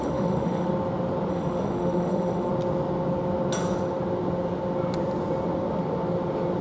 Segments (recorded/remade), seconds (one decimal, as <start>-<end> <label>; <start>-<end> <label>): 0.0-0.7 remade; 0.7-1.3 recorded; 1.3-2.5 remade; 2.5-6.6 recorded